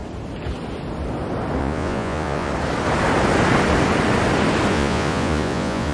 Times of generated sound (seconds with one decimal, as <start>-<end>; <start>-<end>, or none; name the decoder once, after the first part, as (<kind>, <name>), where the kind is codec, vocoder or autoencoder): 1.6-2.5 (vocoder, Vocos); 4.7-5.9